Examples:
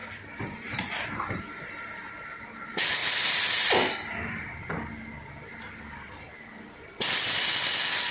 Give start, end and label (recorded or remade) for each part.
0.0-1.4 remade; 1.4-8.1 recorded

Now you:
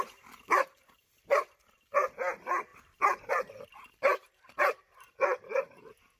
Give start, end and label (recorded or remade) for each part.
0.0-2.7 recorded; 2.7-3.3 remade; 3.3-4.0 recorded; 4.0-5.8 remade; 5.8-6.2 recorded

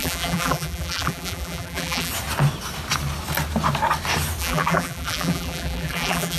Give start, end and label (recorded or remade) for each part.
0.0-2.1 remade; 2.1-4.4 recorded; 4.4-6.4 remade

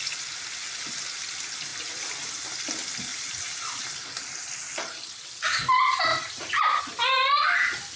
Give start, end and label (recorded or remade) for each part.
0.0-3.1 recorded; 3.1-3.9 remade; 3.9-6.1 recorded; 6.1-6.8 remade; 6.8-8.0 recorded

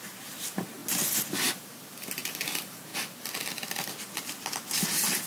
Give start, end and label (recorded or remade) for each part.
0.0-0.8 remade; 0.8-1.4 recorded; 1.4-2.9 remade; 2.9-5.3 recorded

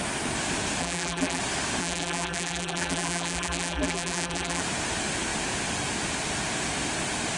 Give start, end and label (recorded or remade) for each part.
0.0-0.8 recorded; 0.8-1.4 remade; 1.4-1.8 recorded; 1.8-4.6 remade; 4.6-7.4 recorded

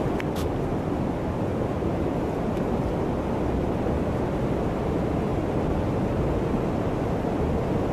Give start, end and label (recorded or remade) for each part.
0.0-7.9 recorded